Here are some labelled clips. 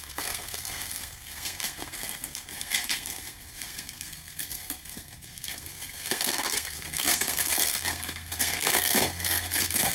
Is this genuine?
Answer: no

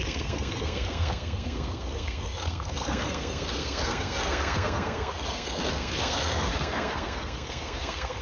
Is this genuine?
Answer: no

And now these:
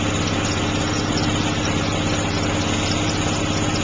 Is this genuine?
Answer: yes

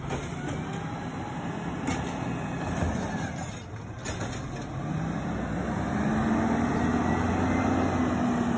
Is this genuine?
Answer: yes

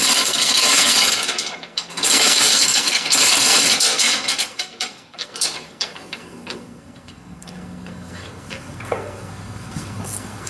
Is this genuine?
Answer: no